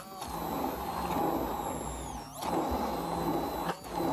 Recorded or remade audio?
recorded